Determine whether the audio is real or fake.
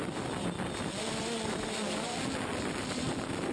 real